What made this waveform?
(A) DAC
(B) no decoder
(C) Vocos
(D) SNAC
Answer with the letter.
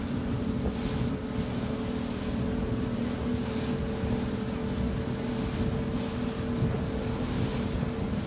B